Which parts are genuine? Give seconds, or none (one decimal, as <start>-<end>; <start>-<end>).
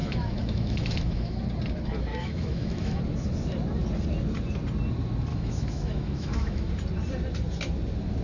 1.4-2.1; 3.0-5.3; 6.7-8.2